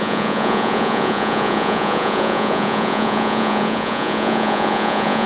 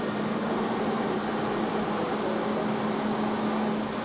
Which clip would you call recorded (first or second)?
second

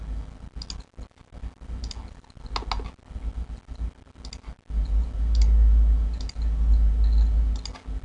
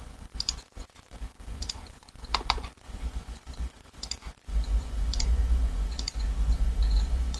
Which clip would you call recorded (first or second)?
first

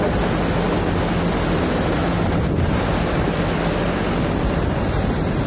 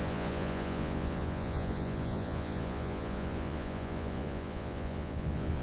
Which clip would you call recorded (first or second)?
first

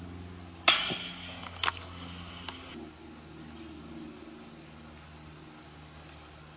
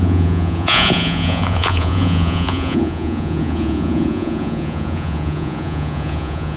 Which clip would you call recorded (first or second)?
first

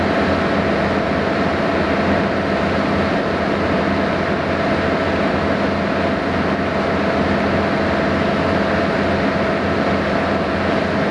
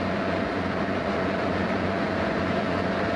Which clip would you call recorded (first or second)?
first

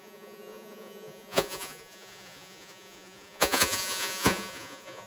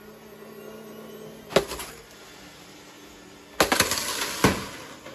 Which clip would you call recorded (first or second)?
second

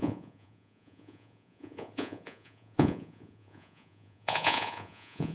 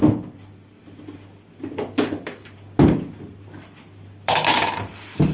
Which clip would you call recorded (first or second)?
second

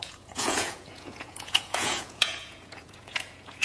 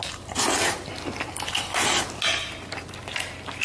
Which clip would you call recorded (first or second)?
second